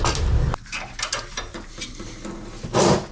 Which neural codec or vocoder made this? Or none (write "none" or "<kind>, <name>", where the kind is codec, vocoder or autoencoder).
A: none